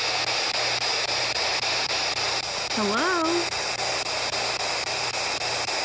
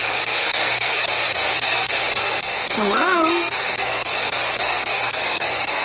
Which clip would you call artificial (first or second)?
second